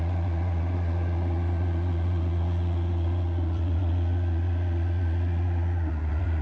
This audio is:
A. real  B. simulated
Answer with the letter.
B